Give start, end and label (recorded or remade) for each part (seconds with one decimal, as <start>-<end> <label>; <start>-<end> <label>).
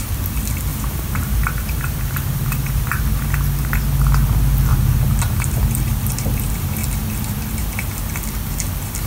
0.0-0.7 recorded; 0.7-2.8 remade; 2.8-4.7 recorded; 4.7-6.0 remade; 6.0-9.1 recorded